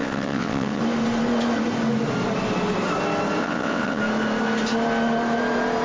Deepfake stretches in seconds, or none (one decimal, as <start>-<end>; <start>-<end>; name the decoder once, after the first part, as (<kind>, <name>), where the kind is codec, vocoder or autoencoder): 0.0-0.8 (vocoder, WaveNeXt); 3.4-4.0